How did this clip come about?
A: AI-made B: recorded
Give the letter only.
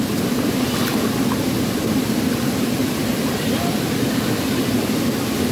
B